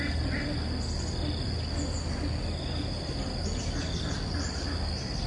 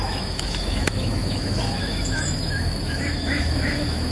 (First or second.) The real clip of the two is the first